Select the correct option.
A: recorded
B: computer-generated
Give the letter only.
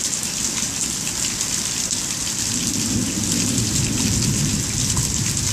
A